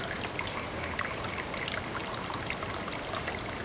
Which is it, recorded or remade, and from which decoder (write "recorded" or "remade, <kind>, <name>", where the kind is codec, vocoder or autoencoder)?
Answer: recorded